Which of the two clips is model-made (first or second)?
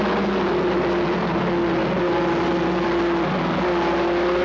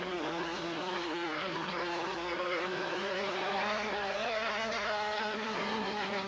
second